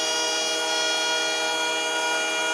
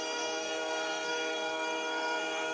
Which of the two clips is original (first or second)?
first